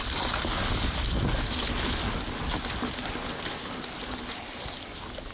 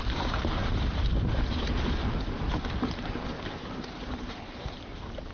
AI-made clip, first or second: second